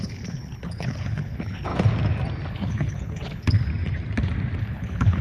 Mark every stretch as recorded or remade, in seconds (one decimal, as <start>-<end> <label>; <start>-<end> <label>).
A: 0.0-1.7 remade; 1.7-2.5 recorded; 2.5-3.7 remade; 3.7-4.6 recorded; 4.6-5.2 remade